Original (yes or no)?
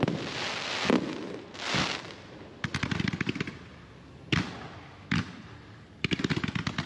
yes